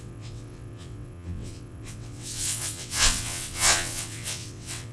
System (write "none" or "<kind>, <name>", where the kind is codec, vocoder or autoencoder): vocoder, WaveNeXt